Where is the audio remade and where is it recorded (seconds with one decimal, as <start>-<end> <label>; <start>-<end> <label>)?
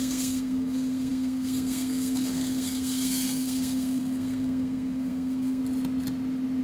0.0-5.6 remade; 5.6-6.6 recorded